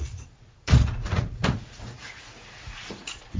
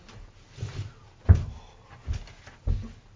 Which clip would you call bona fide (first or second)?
second